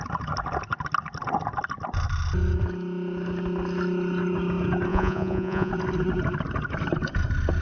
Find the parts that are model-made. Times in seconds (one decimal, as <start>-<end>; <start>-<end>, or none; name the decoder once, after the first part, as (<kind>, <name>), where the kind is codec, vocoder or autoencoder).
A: 4.9-5.7 (vocoder, Vocos)